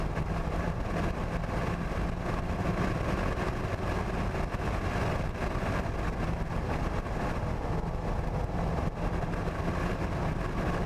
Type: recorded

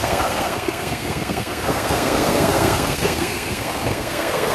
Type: remade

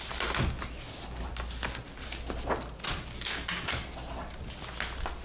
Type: recorded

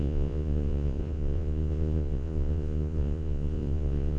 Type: remade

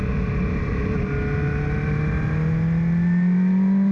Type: recorded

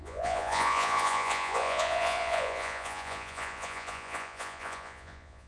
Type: remade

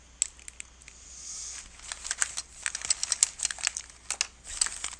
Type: recorded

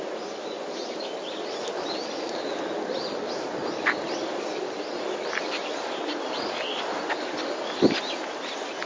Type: recorded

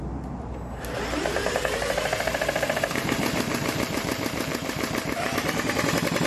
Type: remade